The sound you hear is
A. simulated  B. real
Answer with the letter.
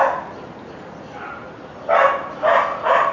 B